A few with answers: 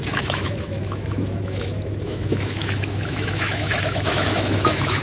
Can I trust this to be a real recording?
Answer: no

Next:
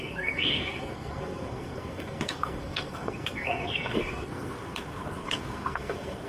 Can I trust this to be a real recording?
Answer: no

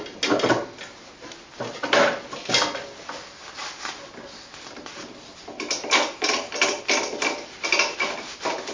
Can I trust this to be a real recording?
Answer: yes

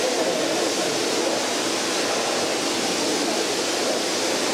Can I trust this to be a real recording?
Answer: yes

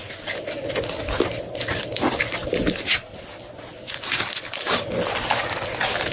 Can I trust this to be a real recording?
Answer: yes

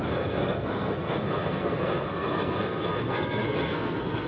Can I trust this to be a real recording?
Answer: no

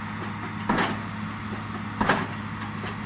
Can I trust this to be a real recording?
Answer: yes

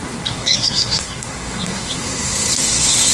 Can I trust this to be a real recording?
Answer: no